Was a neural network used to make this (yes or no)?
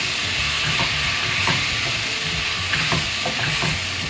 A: no